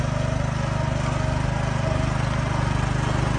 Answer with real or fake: real